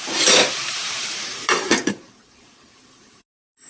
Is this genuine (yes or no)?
no